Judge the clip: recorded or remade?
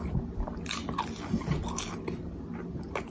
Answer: recorded